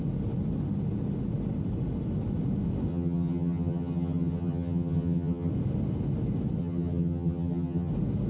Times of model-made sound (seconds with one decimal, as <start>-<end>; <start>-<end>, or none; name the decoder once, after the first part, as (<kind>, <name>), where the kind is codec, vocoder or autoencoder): 2.9-5.5 (vocoder, HiFi-GAN); 6.6-7.9